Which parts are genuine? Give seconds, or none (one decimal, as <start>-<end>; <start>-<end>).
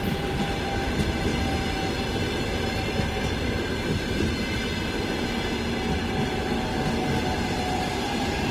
1.3-3.1; 3.7-7.2